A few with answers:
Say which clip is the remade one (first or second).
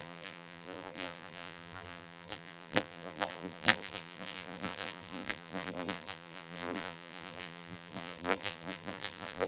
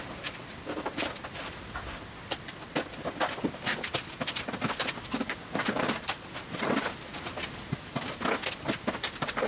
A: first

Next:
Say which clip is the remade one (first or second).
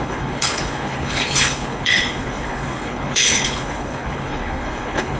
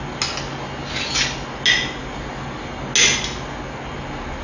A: first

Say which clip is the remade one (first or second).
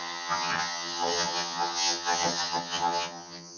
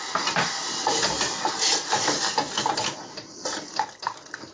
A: first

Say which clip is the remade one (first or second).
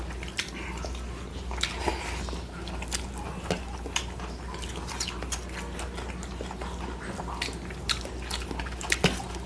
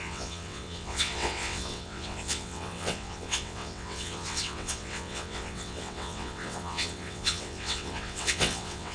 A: second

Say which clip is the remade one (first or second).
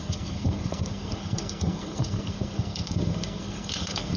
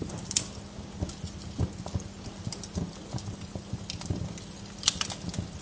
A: first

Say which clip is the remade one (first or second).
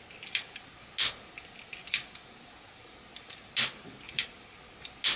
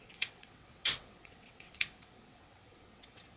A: second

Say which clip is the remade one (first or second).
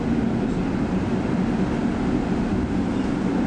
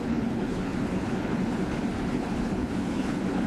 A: second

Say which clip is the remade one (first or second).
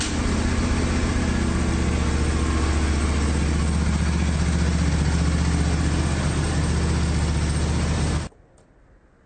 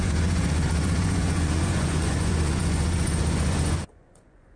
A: second